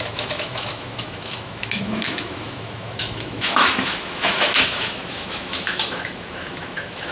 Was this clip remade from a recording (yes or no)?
yes